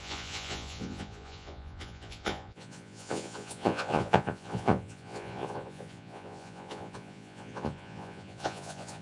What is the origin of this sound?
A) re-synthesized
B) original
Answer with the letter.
A